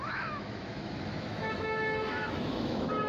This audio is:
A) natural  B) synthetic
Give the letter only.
B